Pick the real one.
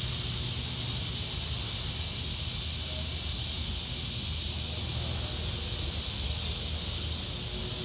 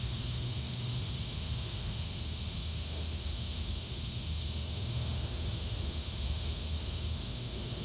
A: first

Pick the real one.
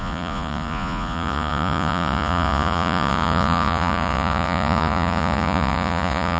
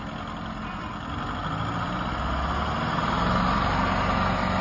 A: second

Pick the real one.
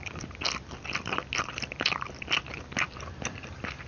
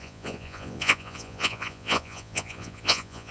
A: first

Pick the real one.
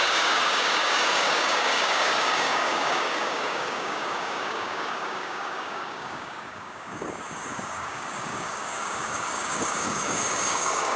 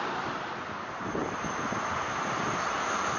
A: second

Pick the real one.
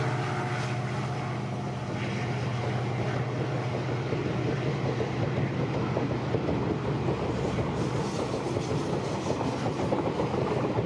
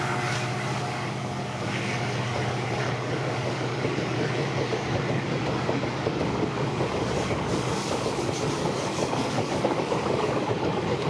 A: first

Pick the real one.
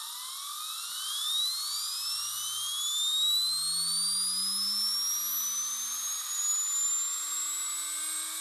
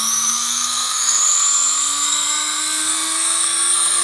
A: first